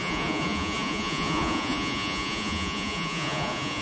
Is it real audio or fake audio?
fake